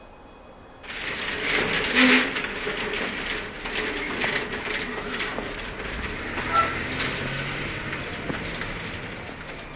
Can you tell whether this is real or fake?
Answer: real